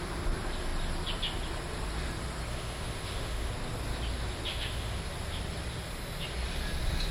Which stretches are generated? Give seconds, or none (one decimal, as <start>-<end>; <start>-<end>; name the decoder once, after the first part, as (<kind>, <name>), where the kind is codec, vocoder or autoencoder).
2.5-3.5 (autoencoder, DAC-VAE); 4.5-5.0